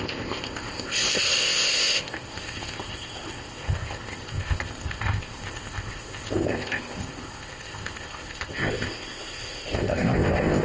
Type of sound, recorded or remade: remade